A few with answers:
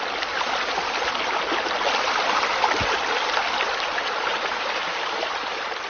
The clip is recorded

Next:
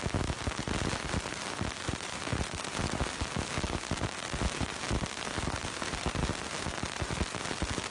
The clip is recorded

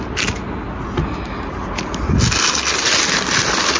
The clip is recorded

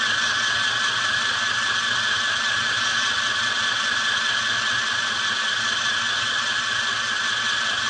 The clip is recorded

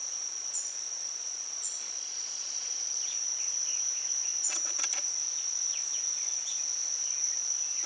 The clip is remade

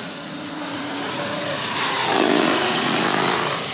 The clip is remade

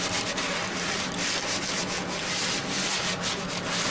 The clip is recorded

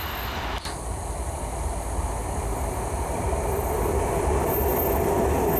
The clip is recorded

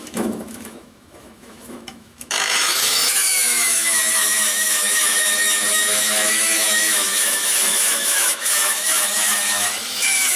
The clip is remade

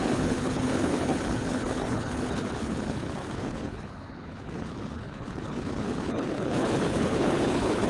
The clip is remade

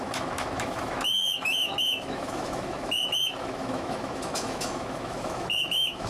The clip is remade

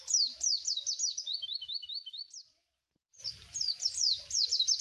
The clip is recorded